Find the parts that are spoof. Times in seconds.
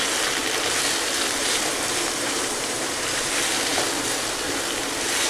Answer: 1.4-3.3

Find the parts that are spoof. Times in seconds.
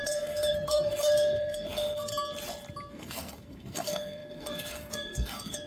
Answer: 0.0-2.1; 2.9-5.7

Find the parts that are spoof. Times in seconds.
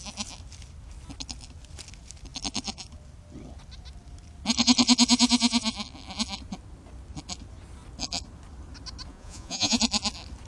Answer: 9.1-9.8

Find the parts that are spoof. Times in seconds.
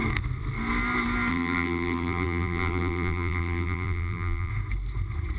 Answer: 1.3-4.5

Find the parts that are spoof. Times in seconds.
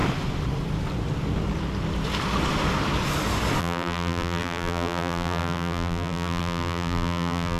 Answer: 3.6-7.6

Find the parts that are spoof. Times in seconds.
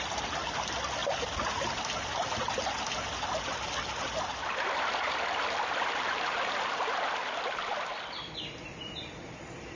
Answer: none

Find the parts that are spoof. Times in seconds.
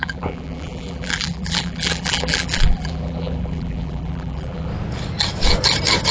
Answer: 0.0-4.7